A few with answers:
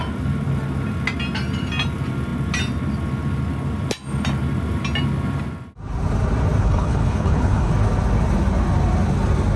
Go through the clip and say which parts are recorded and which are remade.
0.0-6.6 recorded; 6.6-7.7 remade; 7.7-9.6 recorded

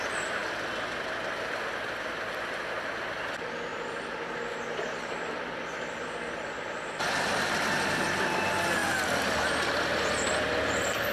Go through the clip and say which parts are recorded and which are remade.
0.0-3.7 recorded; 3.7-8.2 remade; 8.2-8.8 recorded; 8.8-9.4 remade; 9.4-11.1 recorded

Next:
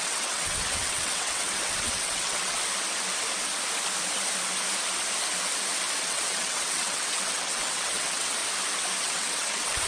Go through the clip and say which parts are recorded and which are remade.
0.0-2.6 remade; 2.6-6.0 recorded; 6.0-8.4 remade; 8.4-9.0 recorded; 9.0-9.9 remade

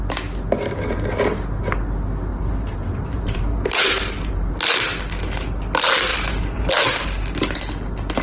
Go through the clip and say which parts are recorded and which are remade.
0.0-2.3 recorded; 2.3-4.5 remade; 4.5-6.1 recorded; 6.1-6.7 remade; 6.7-8.2 recorded